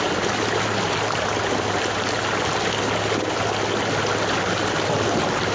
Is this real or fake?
real